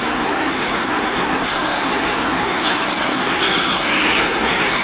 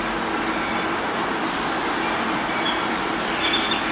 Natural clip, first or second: second